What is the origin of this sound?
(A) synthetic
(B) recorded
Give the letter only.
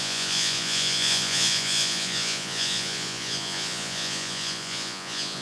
A